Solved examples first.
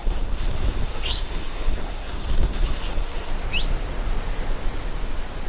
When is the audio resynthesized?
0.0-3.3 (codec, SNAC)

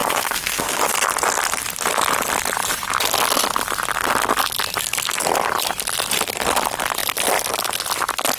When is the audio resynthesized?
0.0-0.8 (codec, SNAC)

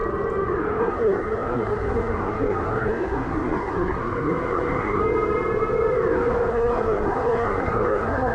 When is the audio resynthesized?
0.8-5.0 (codec, SNAC); 6.5-8.3

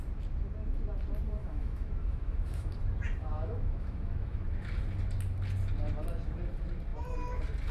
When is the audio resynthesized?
1.4-2.8 (autoencoder, DAC-VAE); 3.2-4.7

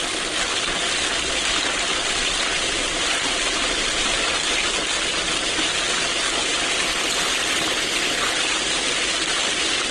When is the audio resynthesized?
none